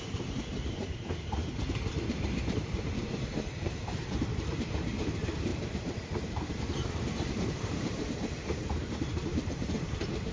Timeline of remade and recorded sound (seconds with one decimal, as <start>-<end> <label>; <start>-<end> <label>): 0.0-1.4 remade; 1.4-2.5 recorded; 2.5-10.3 remade